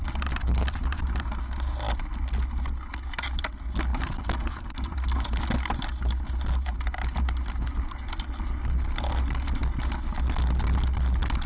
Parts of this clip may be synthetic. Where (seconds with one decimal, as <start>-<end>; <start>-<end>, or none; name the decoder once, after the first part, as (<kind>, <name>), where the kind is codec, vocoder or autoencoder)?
none